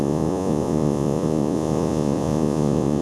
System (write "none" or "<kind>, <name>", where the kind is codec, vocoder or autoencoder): vocoder, Vocos